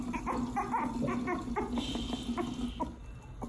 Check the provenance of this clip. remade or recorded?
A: recorded